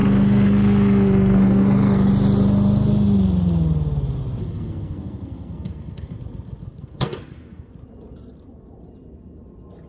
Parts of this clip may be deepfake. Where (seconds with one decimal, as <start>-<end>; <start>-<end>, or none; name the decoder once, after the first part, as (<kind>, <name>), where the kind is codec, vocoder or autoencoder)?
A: 0.0-2.1 (codec, SNAC); 4.4-6.2; 6.7-7.7